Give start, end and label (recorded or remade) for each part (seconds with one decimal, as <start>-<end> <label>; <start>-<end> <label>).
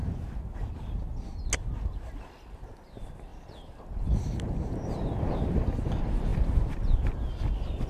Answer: 0.0-7.9 recorded